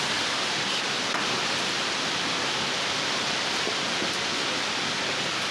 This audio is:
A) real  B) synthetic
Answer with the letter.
A